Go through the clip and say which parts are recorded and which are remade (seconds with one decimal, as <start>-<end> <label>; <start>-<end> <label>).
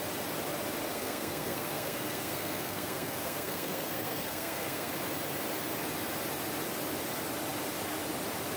0.0-0.9 recorded; 0.9-4.9 remade; 4.9-8.6 recorded